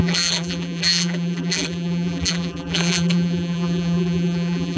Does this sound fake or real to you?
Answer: fake